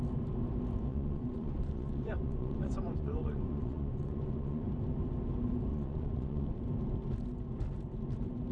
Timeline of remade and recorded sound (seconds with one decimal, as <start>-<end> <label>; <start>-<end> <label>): 0.0-0.9 recorded; 0.9-4.7 remade; 4.7-5.7 recorded; 5.7-6.5 remade; 6.5-8.5 recorded